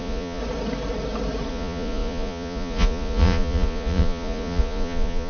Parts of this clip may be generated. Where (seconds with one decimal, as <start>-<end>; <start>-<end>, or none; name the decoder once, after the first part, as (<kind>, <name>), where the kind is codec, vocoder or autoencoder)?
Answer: 0.0-0.4 (vocoder, Vocos); 1.5-5.3